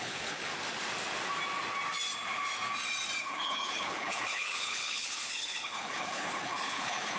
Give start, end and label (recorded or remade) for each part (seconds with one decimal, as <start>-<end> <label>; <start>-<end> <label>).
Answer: 0.0-0.5 remade; 0.5-3.2 recorded; 3.2-7.2 remade